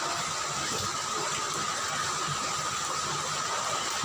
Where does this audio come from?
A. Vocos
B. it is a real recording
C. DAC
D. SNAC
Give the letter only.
B